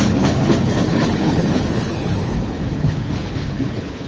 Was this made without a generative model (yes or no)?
no